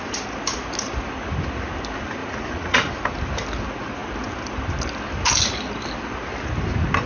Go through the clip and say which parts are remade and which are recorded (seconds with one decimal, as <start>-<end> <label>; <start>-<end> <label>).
0.0-2.2 recorded; 2.2-2.9 remade; 2.9-7.1 recorded